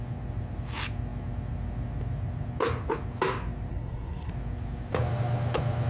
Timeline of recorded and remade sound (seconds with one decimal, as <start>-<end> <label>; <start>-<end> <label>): 0.0-3.7 recorded; 3.7-4.3 remade; 4.3-5.9 recorded

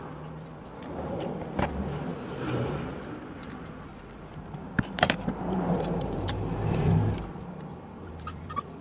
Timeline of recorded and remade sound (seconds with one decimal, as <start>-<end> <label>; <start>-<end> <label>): 0.0-2.1 recorded; 2.1-2.7 remade; 2.7-4.3 recorded; 4.3-6.8 remade; 6.8-8.8 recorded

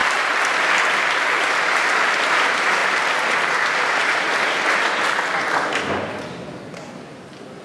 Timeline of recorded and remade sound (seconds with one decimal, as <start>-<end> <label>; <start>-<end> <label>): 0.0-7.6 recorded

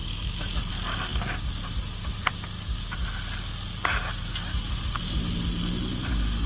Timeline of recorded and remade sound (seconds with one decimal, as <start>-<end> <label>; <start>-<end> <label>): 0.0-0.7 remade; 0.7-6.5 recorded

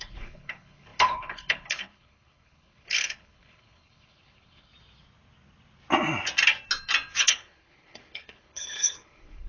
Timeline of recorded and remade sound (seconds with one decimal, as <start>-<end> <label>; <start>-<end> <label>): 0.0-4.7 remade; 4.7-7.2 recorded; 7.2-9.5 remade